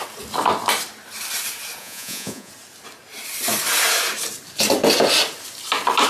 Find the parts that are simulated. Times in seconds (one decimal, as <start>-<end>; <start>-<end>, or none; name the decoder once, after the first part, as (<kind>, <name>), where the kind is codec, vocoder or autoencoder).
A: 1.8-2.5 (vocoder, Vocos)

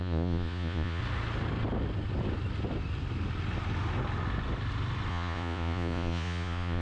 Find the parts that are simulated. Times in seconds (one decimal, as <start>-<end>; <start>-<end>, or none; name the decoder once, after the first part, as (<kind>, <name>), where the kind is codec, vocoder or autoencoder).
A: 0.0-1.0 (vocoder, Vocos); 5.1-6.8